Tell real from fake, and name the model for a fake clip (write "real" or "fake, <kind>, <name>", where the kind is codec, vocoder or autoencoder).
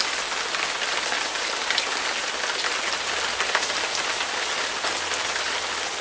real